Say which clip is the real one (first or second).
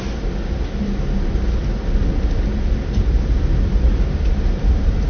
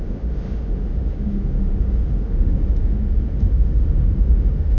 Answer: first